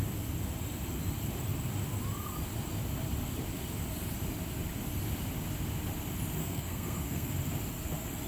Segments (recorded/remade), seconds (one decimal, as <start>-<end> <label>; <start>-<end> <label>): 0.0-6.4 recorded; 6.4-7.3 remade; 7.3-8.3 recorded